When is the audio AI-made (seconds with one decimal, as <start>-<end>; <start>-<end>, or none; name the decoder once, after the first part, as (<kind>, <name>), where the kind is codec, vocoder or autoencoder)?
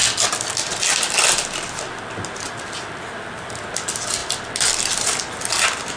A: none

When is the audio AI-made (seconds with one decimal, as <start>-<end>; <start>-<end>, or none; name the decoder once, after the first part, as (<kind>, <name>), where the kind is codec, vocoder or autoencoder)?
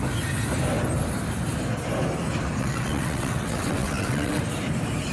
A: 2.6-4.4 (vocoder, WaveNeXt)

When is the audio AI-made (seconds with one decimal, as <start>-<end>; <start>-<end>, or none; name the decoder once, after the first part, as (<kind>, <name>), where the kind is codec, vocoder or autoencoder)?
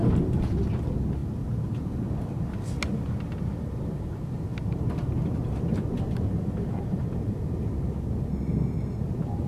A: 8.3-9.0 (codec, SNAC)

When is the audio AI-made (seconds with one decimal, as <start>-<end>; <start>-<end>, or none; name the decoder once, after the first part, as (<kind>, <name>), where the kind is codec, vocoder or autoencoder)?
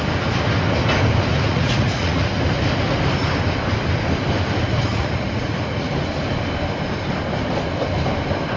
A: 1.5-2.3 (vocoder, Vocos); 4.9-5.9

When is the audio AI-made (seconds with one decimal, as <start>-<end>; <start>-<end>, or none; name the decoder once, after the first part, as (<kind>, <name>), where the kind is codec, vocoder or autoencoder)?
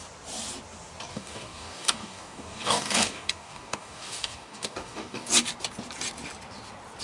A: 1.1-5.3 (codec, DAC)